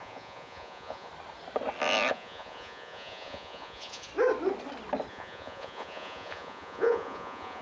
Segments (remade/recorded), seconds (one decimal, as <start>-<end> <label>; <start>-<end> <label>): 0.0-1.1 remade; 1.1-2.1 recorded; 2.1-4.1 remade; 4.1-5.1 recorded; 5.1-7.6 remade

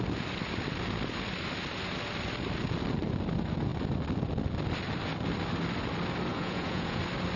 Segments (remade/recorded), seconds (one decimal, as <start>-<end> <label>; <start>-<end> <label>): 0.0-6.3 recorded; 6.3-7.0 remade; 7.0-7.4 recorded

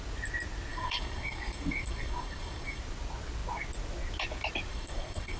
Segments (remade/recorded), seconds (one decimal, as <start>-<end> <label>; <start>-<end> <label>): 0.0-0.7 recorded; 0.7-2.8 remade; 2.8-4.7 recorded; 4.7-5.4 remade

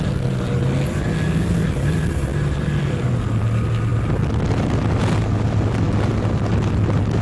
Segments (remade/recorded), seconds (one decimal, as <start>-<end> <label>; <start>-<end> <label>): 0.0-7.2 recorded

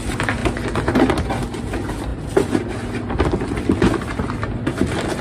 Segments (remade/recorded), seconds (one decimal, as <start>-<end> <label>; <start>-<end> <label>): 0.0-5.2 recorded

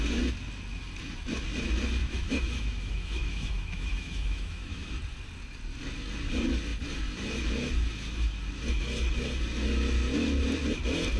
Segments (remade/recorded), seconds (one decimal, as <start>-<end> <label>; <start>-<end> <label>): 0.0-2.0 recorded; 2.0-4.9 remade; 4.9-11.2 recorded

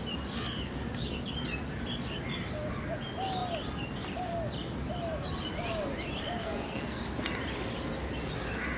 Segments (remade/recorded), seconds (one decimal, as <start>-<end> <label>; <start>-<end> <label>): 0.0-6.4 recorded; 6.4-7.0 remade; 7.0-8.8 recorded